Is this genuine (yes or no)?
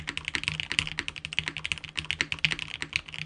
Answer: yes